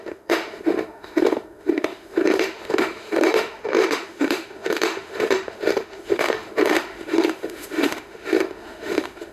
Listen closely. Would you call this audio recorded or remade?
remade